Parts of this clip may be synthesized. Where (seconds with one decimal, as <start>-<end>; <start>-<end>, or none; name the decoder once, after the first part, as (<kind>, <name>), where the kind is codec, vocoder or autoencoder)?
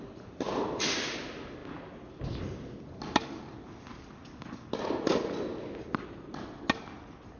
none